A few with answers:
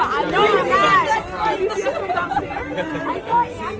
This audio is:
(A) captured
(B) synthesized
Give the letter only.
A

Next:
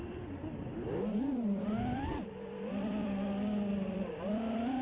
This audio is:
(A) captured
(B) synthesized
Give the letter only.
B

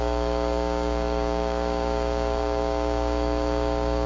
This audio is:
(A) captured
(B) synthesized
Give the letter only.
B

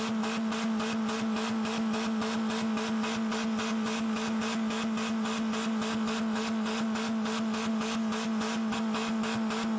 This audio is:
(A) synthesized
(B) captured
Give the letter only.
B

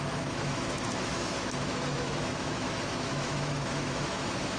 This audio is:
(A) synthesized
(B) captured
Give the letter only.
A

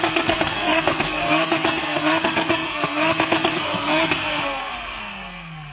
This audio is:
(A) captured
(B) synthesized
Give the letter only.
B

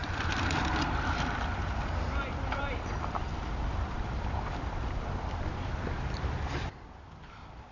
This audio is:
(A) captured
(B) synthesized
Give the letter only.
B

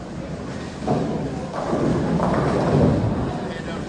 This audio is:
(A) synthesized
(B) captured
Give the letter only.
B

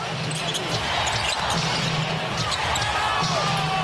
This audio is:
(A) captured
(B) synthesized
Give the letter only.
A